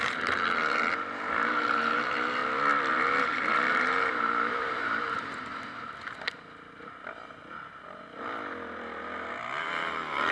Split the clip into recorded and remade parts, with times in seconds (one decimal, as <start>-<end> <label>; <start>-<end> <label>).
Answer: 0.0-2.4 remade; 2.4-3.2 recorded; 3.2-5.5 remade; 5.5-9.6 recorded; 9.6-10.3 remade